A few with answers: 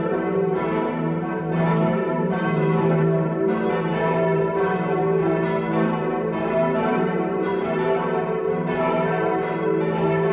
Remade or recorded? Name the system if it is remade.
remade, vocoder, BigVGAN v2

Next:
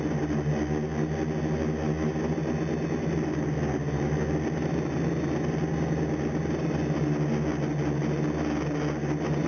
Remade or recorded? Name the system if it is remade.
recorded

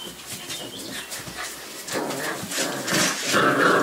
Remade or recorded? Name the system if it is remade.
recorded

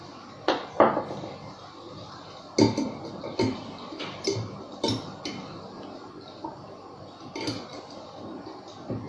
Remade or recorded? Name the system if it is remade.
recorded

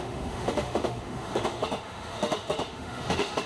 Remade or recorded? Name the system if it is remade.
remade, autoencoder, DAC-VAE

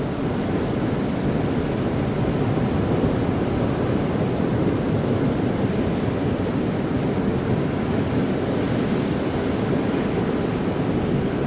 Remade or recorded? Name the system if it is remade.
recorded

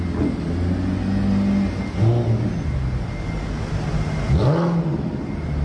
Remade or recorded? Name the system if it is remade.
recorded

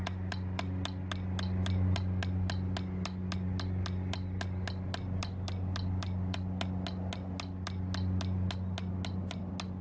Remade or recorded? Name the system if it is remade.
recorded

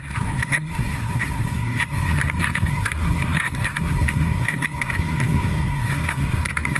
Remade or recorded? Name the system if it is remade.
remade, codec, SNAC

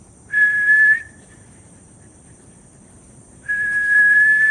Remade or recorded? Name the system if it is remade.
remade, vocoder, BigVGAN v2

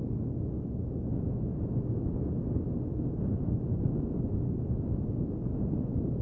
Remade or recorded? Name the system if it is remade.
recorded